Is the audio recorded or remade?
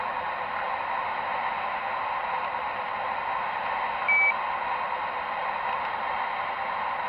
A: recorded